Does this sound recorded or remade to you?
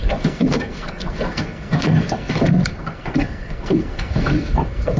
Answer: remade